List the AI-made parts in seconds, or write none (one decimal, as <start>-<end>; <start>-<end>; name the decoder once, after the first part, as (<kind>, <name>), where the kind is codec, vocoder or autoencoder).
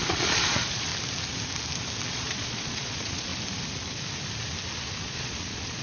0.0-0.9 (vocoder, Vocos); 2.1-3.3; 5.0-5.8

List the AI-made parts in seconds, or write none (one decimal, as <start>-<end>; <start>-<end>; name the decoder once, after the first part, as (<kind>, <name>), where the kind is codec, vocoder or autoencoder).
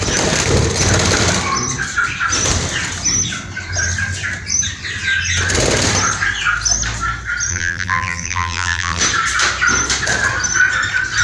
7.5-9.0 (vocoder, BigVGAN v2)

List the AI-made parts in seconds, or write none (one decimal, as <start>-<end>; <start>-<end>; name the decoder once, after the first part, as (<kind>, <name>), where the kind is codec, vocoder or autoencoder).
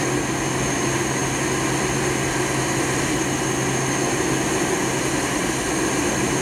none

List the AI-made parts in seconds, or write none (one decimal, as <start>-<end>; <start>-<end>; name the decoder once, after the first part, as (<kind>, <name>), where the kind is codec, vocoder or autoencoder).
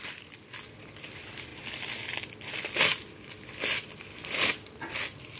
none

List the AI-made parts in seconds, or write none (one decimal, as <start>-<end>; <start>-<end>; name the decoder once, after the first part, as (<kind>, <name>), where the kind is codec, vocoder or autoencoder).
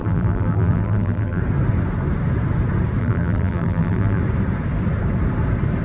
0.0-1.4 (vocoder, BigVGAN v2); 3.0-4.2